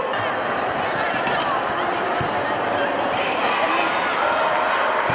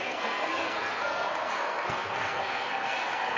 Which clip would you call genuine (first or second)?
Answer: first